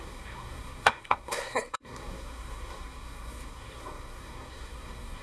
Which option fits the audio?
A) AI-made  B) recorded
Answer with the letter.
A